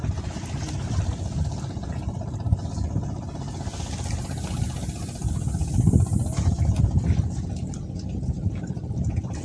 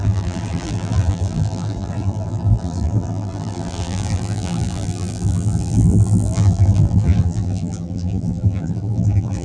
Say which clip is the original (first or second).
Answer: first